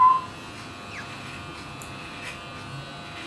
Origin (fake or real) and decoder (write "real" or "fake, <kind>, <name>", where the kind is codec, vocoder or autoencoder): real